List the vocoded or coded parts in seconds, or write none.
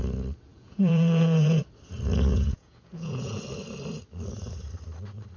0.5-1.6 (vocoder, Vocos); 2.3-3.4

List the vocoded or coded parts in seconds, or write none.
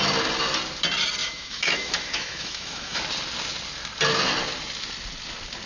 1.2-3.0 (autoencoder, DAC-VAE)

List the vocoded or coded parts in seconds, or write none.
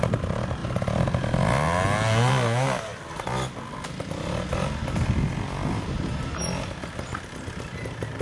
none